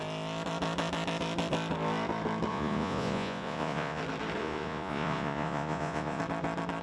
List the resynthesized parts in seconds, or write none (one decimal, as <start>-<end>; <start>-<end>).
2.5-4.0; 4.4-6.2